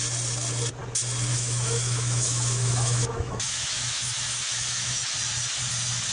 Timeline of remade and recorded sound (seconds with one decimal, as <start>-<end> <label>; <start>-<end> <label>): 0.0-1.3 recorded; 1.3-5.0 remade; 5.0-6.1 recorded